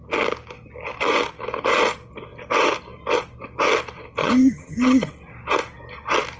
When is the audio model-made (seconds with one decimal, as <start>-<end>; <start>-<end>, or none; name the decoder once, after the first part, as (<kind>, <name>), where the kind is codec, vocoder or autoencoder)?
4.2-5.1 (vocoder, HiFi-GAN)